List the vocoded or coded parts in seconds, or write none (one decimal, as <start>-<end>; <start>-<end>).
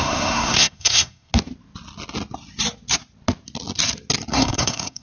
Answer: 0.0-1.3; 4.3-5.0